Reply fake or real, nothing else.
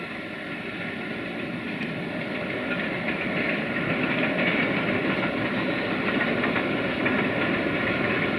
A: real